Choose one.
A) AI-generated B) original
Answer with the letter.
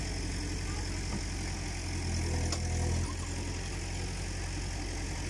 B